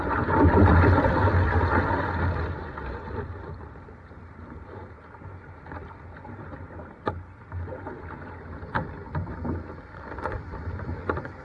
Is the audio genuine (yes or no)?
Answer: yes